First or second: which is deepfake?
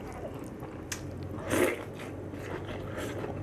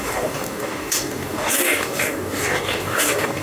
second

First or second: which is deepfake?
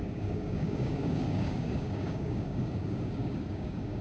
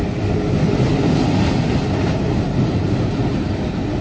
first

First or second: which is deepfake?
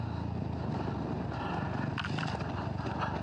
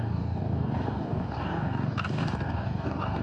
second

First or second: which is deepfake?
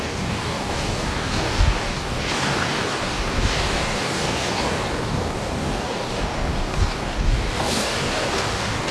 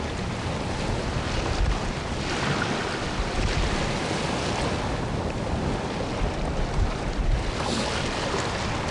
first